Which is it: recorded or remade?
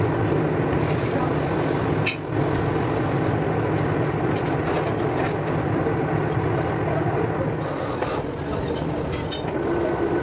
recorded